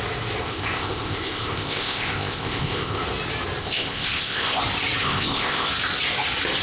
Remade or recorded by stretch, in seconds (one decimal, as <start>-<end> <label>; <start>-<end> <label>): 0.0-0.4 recorded; 0.4-3.0 remade; 3.0-3.6 recorded; 3.6-4.6 remade; 4.6-5.0 recorded; 5.0-5.7 remade; 5.7-6.6 recorded